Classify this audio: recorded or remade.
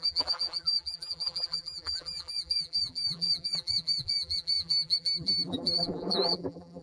remade